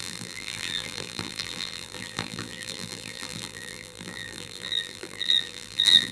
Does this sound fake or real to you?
fake